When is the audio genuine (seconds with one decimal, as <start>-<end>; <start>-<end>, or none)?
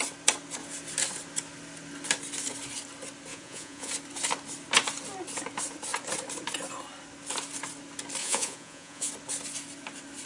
0.0-3.3; 3.9-8.2; 9.1-10.3